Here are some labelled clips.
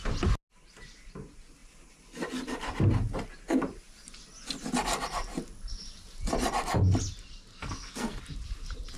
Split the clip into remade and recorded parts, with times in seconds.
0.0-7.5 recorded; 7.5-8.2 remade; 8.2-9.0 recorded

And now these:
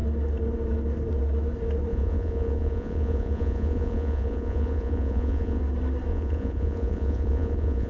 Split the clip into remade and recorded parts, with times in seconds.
0.0-1.9 recorded; 1.9-5.6 remade; 5.6-6.1 recorded; 6.1-7.9 remade

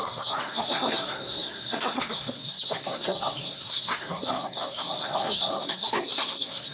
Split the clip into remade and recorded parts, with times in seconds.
0.0-6.7 remade

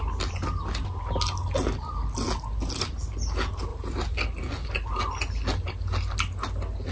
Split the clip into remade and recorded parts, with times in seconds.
0.0-3.7 recorded; 3.7-4.9 remade; 4.9-6.9 recorded